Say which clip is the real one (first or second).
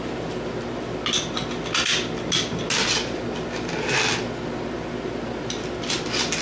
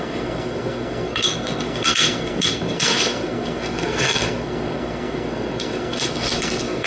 first